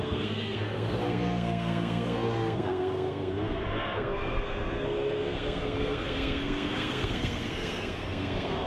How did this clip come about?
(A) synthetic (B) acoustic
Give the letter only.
A